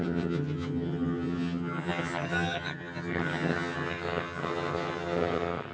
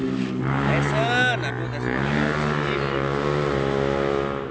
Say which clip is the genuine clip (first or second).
second